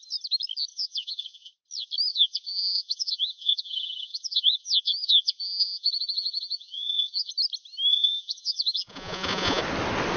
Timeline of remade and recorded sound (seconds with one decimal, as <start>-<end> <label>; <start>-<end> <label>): 0.0-0.7 recorded; 0.7-1.5 remade; 1.5-2.1 recorded; 2.1-7.3 remade; 7.3-7.9 recorded; 7.9-9.6 remade; 9.6-10.2 recorded